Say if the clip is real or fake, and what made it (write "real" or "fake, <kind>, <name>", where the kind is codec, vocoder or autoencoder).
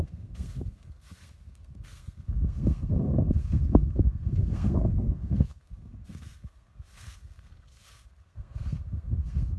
fake, codec, SNAC